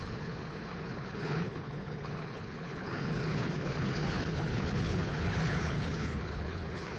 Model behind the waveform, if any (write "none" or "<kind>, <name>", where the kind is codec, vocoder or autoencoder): codec, HILCodec